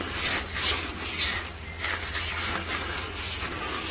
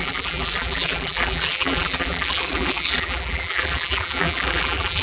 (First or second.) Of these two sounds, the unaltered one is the first